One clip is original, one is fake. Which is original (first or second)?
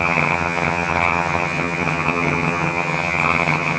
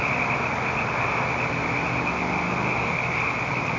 second